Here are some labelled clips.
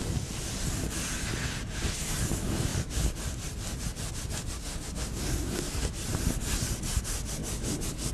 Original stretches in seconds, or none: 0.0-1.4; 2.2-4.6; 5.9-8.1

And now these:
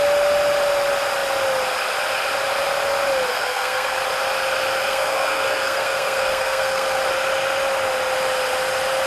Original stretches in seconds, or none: 0.0-3.3; 4.0-4.8; 7.0-9.1

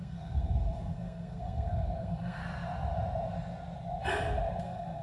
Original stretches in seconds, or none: 2.4-4.6